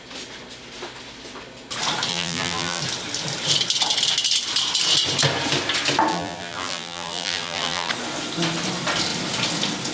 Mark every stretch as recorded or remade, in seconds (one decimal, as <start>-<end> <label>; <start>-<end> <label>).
0.0-2.1 recorded; 2.1-2.8 remade; 2.8-6.1 recorded; 6.1-7.9 remade; 7.9-9.9 recorded